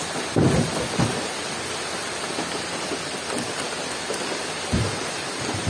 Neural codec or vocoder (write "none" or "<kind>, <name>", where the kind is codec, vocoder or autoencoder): none